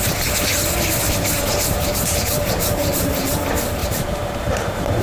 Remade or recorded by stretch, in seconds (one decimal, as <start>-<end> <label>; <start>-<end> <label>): 0.0-1.5 recorded; 1.5-3.3 remade; 3.3-3.8 recorded; 3.8-5.0 remade